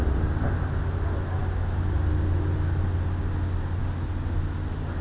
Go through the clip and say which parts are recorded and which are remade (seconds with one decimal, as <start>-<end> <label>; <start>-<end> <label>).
0.0-5.0 recorded